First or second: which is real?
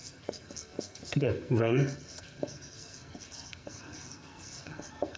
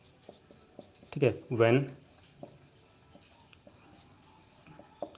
second